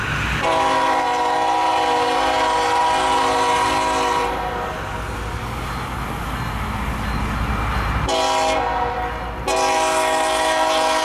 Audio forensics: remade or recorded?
recorded